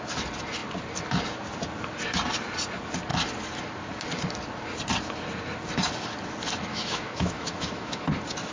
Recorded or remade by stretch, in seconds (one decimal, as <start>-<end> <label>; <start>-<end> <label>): 0.0-6.7 recorded; 6.7-8.1 remade; 8.1-8.5 recorded